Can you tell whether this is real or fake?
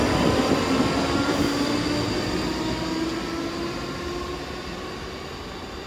real